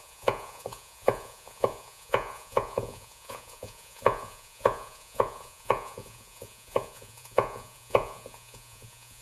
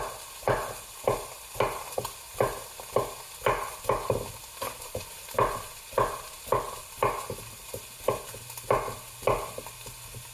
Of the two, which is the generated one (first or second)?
first